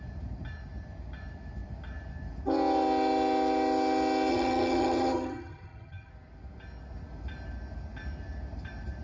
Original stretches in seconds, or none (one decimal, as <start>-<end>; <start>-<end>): 0.0-4.3; 6.1-9.0